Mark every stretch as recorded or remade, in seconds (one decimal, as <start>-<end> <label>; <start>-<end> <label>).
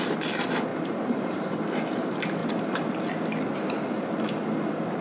0.0-0.7 recorded; 0.7-1.4 remade; 1.4-2.4 recorded; 2.4-2.9 remade; 2.9-5.0 recorded